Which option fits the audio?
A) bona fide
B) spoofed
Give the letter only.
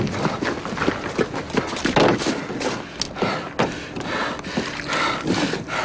A